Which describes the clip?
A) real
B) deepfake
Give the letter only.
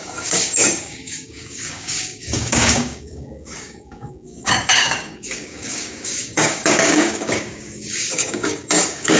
B